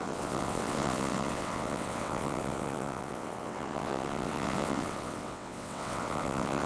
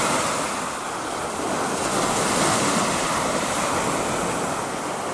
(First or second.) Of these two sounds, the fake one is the first